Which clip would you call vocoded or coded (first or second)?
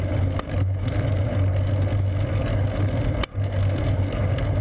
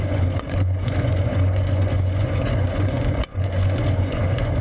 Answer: second